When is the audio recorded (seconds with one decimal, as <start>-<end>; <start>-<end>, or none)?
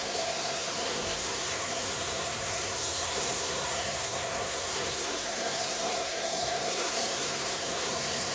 none